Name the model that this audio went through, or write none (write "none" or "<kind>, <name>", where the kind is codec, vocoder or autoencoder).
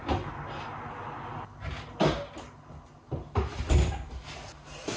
none